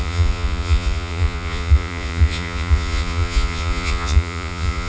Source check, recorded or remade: remade